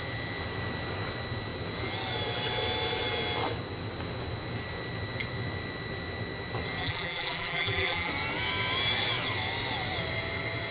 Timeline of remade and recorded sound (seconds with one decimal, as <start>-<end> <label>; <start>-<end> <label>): 0.0-6.8 recorded; 6.8-8.1 remade; 8.1-10.7 recorded